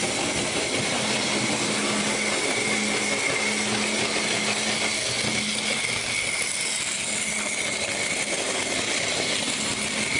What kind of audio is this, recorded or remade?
recorded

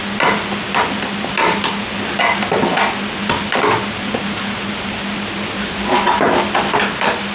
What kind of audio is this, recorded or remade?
recorded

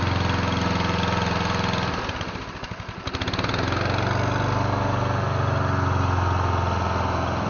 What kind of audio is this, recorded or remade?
recorded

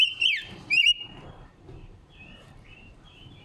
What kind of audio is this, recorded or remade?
remade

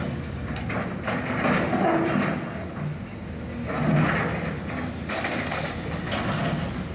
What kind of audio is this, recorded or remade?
recorded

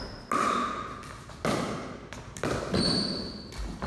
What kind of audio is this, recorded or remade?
recorded